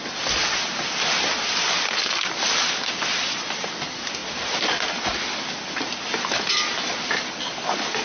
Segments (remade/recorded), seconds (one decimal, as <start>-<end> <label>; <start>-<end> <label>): 0.0-8.0 recorded